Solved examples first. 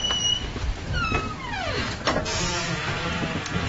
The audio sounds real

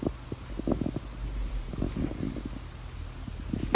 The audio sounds real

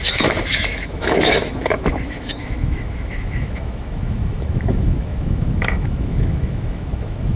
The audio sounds fake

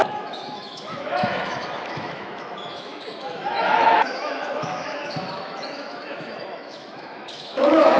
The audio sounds fake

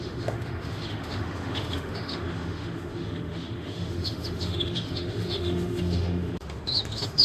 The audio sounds fake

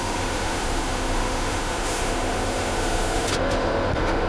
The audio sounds fake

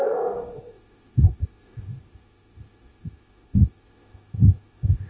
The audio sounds fake